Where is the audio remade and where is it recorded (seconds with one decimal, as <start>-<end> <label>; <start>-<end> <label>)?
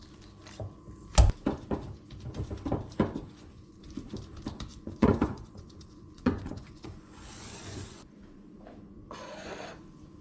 0.0-3.2 recorded; 3.2-3.8 remade; 3.8-4.7 recorded; 4.7-9.5 remade; 9.5-10.2 recorded